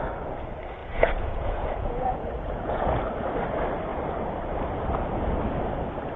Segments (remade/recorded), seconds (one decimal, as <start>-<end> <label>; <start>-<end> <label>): 0.0-0.8 recorded; 0.8-3.0 remade; 3.0-6.2 recorded